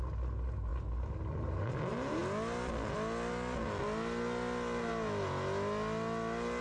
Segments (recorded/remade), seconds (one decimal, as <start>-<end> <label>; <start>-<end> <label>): 0.0-6.6 recorded